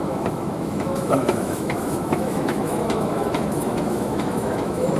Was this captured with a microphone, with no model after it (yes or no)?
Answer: no